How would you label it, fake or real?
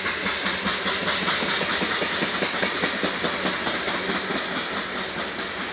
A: real